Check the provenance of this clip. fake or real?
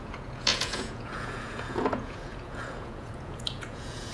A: fake